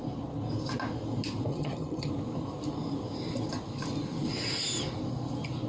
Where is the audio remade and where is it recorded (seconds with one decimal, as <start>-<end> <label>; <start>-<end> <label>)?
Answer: 0.0-1.5 recorded; 1.5-2.1 remade; 2.1-5.7 recorded